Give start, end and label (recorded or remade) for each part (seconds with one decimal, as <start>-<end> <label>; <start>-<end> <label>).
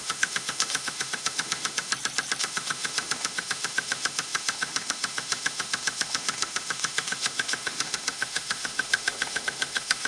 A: 0.0-1.9 remade; 1.9-2.4 recorded; 2.4-10.1 remade